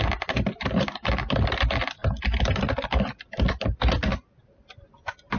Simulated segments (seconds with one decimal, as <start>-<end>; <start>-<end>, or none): none